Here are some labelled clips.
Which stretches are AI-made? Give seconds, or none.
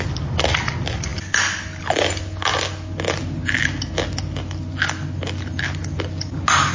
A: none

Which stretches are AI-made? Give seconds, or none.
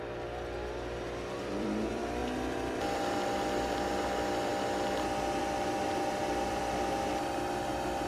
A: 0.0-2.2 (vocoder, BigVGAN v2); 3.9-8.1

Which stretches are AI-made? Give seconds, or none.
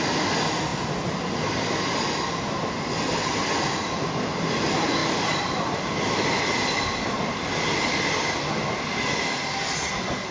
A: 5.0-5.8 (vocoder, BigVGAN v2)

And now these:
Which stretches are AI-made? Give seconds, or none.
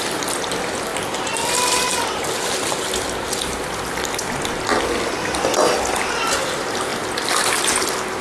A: 6.9-7.6 (vocoder, BigVGAN v2)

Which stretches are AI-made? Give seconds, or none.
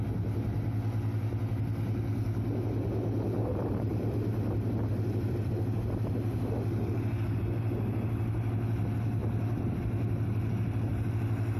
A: 3.4-5.5 (vocoder, BigVGAN v2); 9.2-9.8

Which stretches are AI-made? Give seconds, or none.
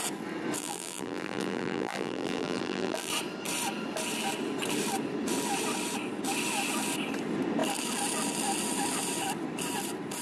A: 0.6-3.1 (vocoder, BigVGAN v2)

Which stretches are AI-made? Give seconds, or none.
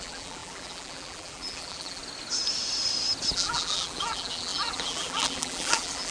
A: 0.0-2.0 (vocoder, BigVGAN v2); 3.3-6.1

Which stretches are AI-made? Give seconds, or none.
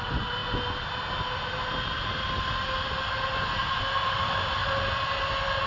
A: 0.0-0.4 (vocoder, BigVGAN v2); 3.8-4.6